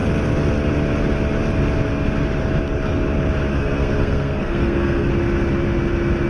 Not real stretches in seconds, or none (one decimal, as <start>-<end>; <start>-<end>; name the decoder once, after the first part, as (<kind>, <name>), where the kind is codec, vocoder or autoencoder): 3.5-5.1 (codec, SNAC)

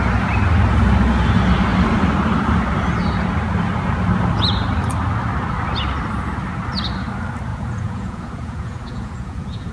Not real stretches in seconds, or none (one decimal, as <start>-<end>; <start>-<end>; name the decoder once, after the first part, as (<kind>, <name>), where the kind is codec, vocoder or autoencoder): 7.5-9.7 (vocoder, Vocos)

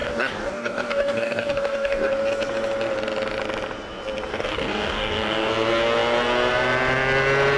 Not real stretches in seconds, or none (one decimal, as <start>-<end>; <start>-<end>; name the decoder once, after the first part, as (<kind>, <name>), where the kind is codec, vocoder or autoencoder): 0.0-2.1 (codec, DAC); 4.3-5.5

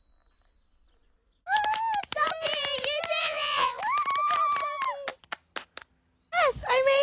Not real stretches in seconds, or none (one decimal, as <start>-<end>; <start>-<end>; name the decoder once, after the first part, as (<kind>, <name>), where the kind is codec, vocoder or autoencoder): 3.2-3.8 (vocoder, Vocos)

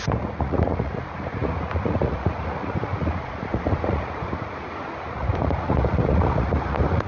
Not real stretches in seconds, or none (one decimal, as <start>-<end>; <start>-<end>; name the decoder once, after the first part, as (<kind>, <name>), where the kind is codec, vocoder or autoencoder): 0.0-7.1 (vocoder, Vocos)

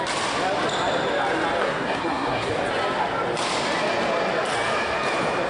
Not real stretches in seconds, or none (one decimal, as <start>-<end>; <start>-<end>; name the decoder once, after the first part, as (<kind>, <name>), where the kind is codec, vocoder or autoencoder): 1.6-2.5 (codec, SNAC)

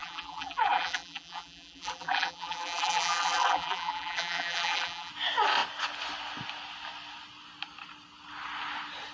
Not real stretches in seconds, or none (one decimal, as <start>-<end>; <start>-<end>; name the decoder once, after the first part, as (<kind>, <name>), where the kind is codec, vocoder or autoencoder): 0.0-5.1 (vocoder, BigVGAN v2)